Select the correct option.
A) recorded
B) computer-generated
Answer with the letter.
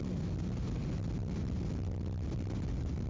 A